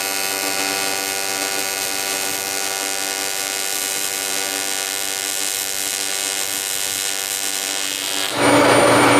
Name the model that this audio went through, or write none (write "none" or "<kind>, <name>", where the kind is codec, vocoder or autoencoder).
none